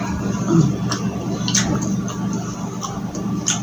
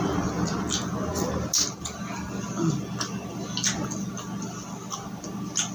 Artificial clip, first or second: first